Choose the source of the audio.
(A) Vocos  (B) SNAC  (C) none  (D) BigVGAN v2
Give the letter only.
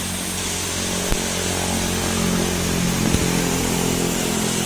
C